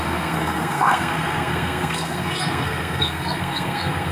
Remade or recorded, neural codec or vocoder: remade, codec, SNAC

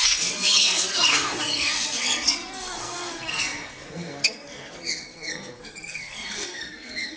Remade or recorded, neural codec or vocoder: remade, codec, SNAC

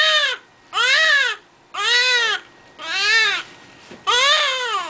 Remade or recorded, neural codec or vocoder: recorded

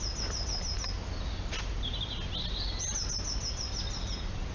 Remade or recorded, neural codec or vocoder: recorded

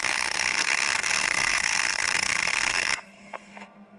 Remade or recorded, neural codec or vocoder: remade, codec, SNAC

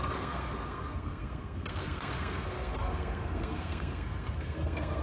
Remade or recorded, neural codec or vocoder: remade, codec, SNAC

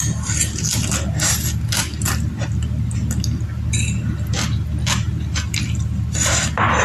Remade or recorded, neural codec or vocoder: recorded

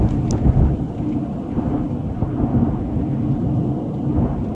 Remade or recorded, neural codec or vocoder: recorded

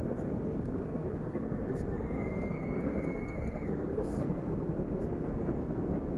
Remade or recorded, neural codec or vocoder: remade, codec, SNAC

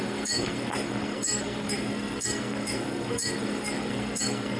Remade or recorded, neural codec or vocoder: remade, codec, SNAC